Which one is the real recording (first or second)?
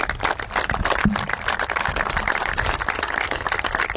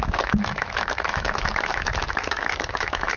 first